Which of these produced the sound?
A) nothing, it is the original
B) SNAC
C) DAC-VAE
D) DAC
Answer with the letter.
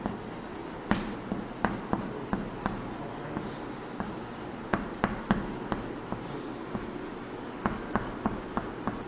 A